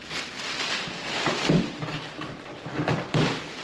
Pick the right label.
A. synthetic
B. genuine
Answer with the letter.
B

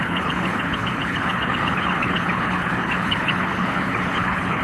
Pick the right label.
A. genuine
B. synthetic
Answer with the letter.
B